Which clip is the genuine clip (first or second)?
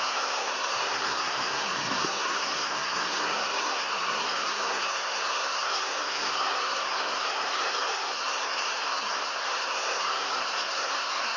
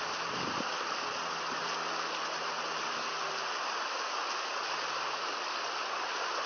second